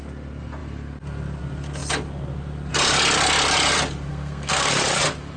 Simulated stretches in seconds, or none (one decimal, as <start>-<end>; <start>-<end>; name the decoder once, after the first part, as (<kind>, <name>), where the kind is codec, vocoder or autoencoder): 4.1-4.7 (codec, SNAC)